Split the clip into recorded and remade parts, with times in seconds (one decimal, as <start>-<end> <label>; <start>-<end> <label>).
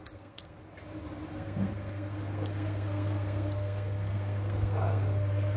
0.0-0.6 remade; 0.6-1.3 recorded; 1.3-5.6 remade